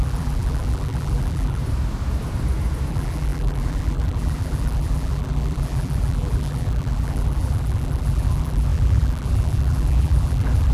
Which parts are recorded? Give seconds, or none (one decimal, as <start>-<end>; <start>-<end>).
1.6-2.9